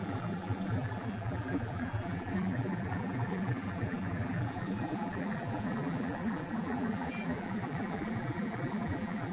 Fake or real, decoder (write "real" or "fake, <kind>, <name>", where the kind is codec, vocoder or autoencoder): fake, vocoder, BigVGAN v2